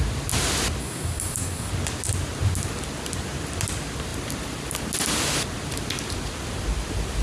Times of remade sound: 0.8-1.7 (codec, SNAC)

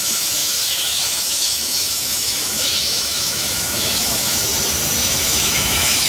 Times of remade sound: 0.0-4.5 (autoencoder, DAC-VAE); 5.0-6.1

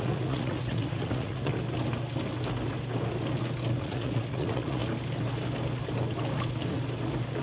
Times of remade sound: 0.0-1.5 (vocoder, Vocos); 3.8-4.8

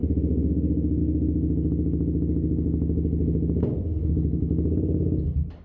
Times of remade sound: none